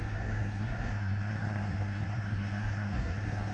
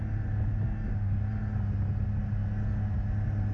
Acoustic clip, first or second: second